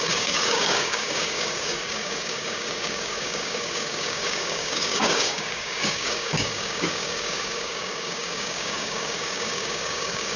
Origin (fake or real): fake